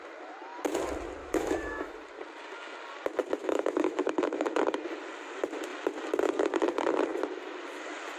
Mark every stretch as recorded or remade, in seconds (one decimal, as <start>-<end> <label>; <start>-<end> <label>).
0.0-1.2 recorded; 1.2-1.9 remade; 1.9-3.4 recorded; 3.4-4.6 remade; 4.6-8.2 recorded